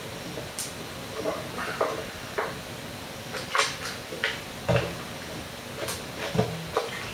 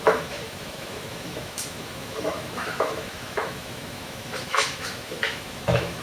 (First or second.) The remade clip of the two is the second